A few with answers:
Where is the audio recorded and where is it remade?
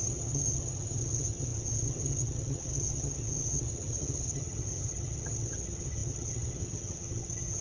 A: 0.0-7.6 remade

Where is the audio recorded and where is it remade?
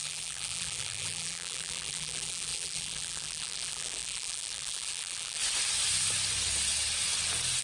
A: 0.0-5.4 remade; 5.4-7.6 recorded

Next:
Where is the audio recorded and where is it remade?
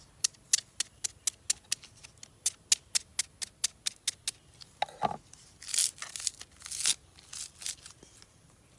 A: 0.0-8.8 recorded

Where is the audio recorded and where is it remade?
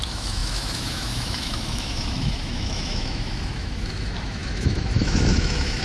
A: 0.0-5.8 remade